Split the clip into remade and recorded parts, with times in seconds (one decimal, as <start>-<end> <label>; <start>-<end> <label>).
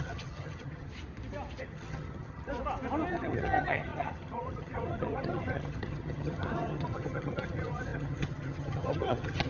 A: 0.0-0.9 remade; 0.9-1.6 recorded; 1.6-2.5 remade; 2.5-3.1 recorded; 3.1-9.5 remade